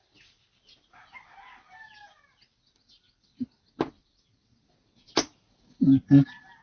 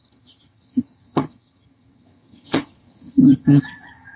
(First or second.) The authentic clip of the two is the first